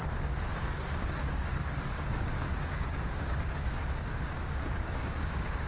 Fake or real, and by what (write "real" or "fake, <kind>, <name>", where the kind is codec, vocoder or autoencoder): fake, codec, DAC